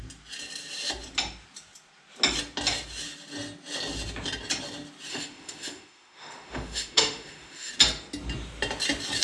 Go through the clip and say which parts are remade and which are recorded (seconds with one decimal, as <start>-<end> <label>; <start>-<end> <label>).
0.0-5.1 recorded; 5.1-7.7 remade; 7.7-9.2 recorded